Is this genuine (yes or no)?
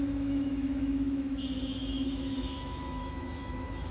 no